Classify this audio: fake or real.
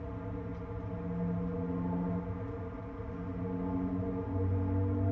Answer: real